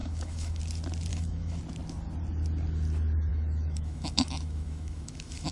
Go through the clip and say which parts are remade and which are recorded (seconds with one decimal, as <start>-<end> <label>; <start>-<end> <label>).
0.0-0.6 remade; 0.6-1.1 recorded; 1.1-1.6 remade; 1.6-3.3 recorded; 3.3-5.5 remade